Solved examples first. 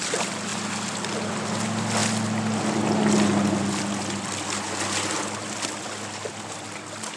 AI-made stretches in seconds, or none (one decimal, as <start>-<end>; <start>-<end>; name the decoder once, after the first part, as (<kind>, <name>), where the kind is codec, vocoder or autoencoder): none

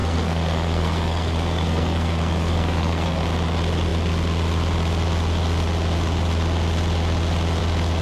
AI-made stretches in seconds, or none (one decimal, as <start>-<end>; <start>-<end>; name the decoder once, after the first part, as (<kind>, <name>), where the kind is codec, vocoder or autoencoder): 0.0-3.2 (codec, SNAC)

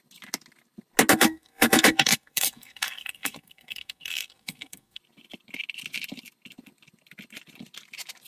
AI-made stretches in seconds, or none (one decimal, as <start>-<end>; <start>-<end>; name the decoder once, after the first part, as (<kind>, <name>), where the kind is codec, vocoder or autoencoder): 1.1-5.0 (codec, SNAC)

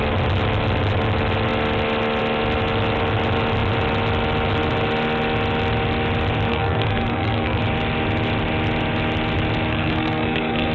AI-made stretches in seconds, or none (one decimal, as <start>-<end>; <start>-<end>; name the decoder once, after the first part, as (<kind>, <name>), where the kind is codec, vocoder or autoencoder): 6.5-7.6 (codec, SNAC); 9.7-10.7

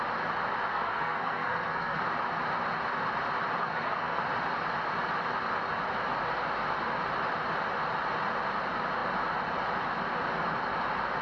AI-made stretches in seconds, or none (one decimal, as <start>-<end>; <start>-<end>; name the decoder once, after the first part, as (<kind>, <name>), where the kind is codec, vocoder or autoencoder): 0.7-2.0 (codec, SNAC); 3.6-4.2